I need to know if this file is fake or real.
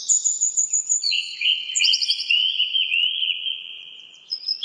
fake